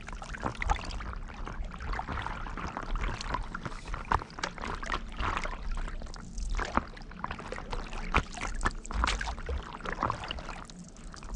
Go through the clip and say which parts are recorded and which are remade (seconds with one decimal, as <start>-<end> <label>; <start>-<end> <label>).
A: 0.0-11.4 recorded